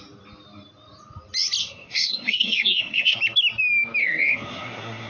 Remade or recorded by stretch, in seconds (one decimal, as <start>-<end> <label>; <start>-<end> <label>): 0.0-1.6 recorded; 1.6-3.2 remade; 3.2-4.0 recorded; 4.0-5.1 remade